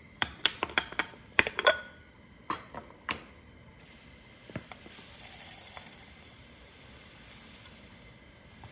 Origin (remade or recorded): remade